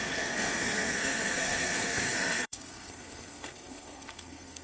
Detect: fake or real fake